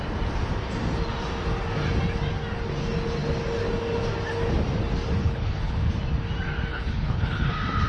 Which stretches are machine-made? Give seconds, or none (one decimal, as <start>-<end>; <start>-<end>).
5.2-5.8; 6.7-7.5